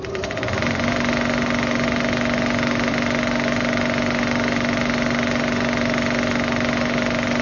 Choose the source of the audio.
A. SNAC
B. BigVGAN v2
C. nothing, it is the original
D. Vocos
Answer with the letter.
C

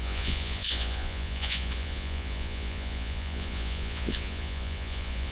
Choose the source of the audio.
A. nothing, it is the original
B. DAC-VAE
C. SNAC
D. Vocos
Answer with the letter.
D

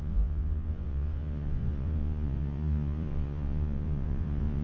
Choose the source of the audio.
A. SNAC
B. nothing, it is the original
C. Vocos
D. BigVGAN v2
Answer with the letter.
C